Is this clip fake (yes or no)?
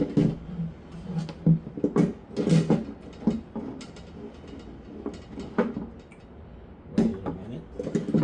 no